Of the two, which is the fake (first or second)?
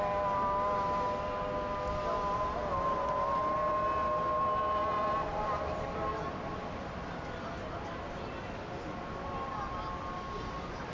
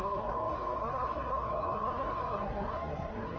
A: second